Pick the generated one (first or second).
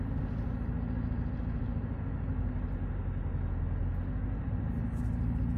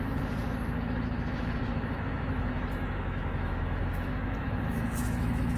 second